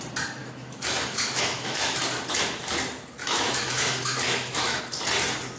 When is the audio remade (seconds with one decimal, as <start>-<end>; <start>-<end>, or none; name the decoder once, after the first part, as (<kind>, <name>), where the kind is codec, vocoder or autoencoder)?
0.4-2.0 (autoencoder, DAC-VAE); 3.2-4.8